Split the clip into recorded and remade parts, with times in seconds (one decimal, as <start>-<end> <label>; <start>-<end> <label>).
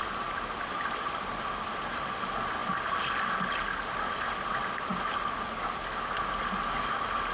0.0-7.3 recorded